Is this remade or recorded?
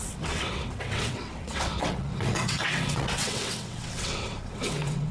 remade